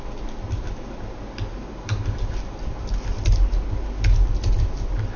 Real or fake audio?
real